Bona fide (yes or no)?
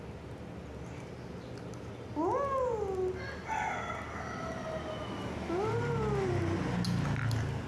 yes